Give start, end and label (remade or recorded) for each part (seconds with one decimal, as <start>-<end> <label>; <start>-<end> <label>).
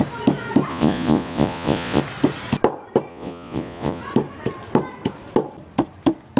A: 0.0-0.7 recorded; 0.7-2.0 remade; 2.0-3.1 recorded; 3.1-4.0 remade; 4.0-6.4 recorded